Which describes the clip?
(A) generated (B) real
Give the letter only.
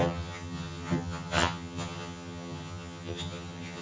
A